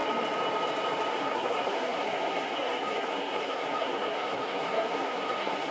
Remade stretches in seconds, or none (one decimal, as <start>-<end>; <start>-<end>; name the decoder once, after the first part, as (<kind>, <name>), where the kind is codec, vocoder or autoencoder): 1.1-5.7 (codec, SNAC)